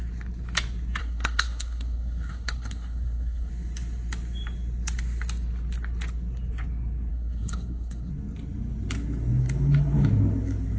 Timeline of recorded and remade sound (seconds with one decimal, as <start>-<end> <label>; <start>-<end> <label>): 0.0-1.0 recorded; 1.0-3.5 remade; 3.5-7.1 recorded; 7.1-8.1 remade; 8.1-10.8 recorded